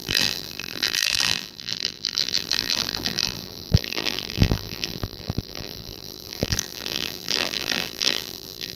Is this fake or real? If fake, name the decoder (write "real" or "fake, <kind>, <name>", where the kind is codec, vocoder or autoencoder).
fake, vocoder, BigVGAN v2